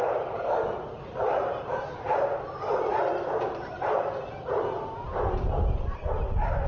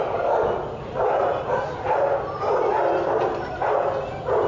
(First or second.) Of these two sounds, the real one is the second